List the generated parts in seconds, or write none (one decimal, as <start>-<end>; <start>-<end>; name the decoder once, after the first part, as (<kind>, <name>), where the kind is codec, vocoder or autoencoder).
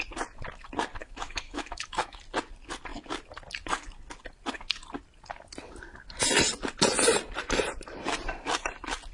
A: 1.0-2.2 (autoencoder, DAC-VAE)